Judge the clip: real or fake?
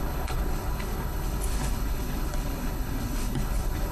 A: fake